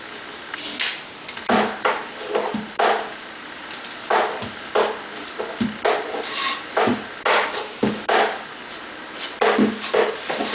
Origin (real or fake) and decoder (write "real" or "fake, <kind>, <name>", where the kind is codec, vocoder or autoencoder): real